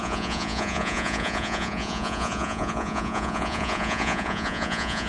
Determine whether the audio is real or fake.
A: fake